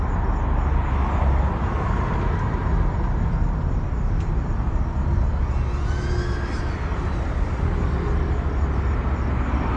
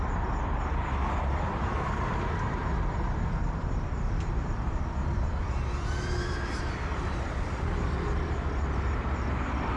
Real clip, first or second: first